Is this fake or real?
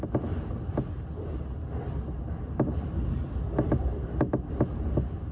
real